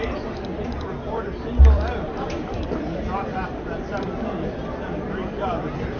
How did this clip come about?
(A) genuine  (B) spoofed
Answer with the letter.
B